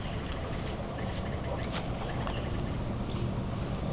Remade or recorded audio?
recorded